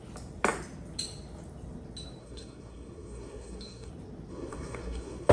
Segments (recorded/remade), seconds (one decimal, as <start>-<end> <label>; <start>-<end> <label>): 0.0-2.2 recorded; 2.2-3.9 remade; 3.9-4.3 recorded; 4.3-5.3 remade